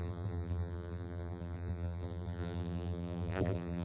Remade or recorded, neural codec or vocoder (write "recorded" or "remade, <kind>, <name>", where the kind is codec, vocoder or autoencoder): remade, vocoder, BigVGAN v2